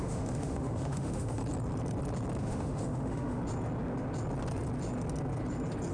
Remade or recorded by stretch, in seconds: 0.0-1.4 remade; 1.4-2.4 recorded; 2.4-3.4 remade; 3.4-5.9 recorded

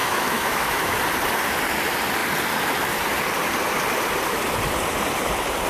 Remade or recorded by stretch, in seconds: 0.0-1.0 remade; 1.0-5.7 recorded

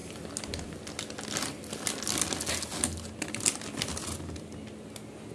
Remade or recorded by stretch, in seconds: 0.0-5.3 recorded

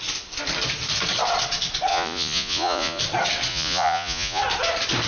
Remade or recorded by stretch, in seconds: 0.0-1.9 recorded; 1.9-3.0 remade; 3.0-3.5 recorded; 3.5-4.4 remade; 4.4-5.1 recorded

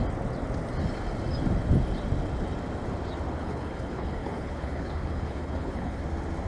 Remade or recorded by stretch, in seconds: 0.0-3.4 recorded; 3.4-6.0 remade; 6.0-6.5 recorded